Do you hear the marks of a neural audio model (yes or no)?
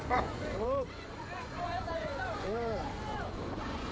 yes